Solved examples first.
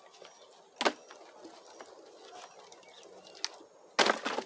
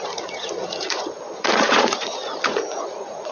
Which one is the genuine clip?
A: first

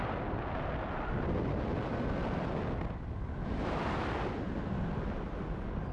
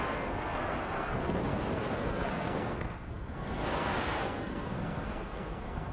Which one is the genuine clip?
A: first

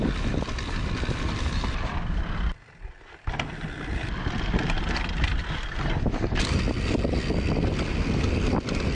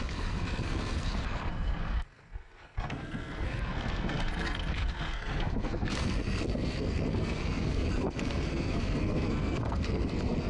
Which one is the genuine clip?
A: first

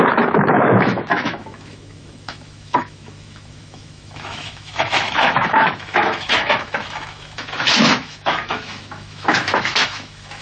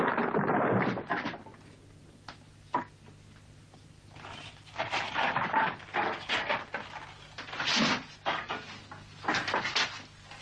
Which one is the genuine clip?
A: second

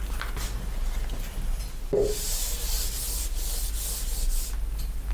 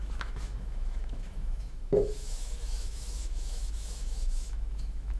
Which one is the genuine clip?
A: first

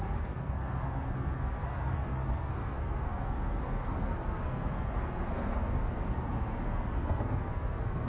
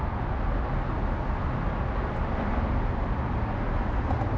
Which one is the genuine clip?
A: second